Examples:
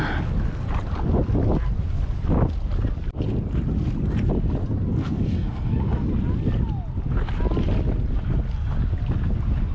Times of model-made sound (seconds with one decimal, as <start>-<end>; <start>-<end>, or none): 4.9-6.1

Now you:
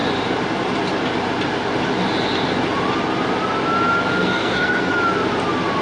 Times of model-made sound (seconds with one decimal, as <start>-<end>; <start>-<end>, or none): 4.2-4.9

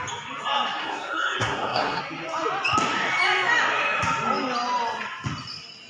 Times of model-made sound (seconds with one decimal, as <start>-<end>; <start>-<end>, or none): 0.8-2.0

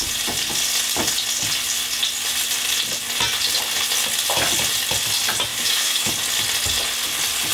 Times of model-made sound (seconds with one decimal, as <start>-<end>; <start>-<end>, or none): 5.5-6.1